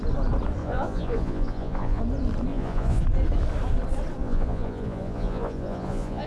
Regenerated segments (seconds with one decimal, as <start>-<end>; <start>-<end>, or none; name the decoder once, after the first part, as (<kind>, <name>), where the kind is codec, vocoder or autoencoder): 0.6-2.0 (vocoder, Vocos); 2.5-3.0; 4.2-6.3